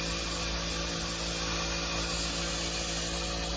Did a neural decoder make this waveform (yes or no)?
no